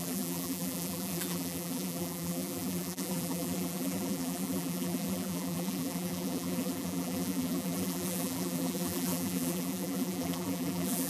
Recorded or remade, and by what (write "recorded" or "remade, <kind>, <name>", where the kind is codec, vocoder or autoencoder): remade, vocoder, BigVGAN v2